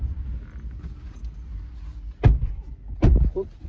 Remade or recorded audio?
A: recorded